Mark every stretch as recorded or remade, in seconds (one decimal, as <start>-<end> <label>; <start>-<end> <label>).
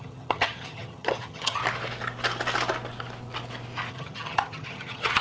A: 0.0-1.6 remade; 1.6-3.9 recorded; 3.9-5.2 remade